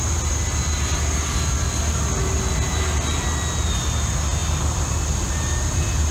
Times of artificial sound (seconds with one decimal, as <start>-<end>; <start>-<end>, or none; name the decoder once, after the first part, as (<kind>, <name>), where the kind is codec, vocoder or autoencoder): none